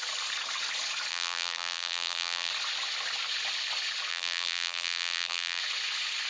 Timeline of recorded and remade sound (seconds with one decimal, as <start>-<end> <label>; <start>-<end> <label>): 0.0-1.1 recorded; 1.1-2.5 remade; 2.5-4.1 recorded; 4.1-5.6 remade; 5.6-6.3 recorded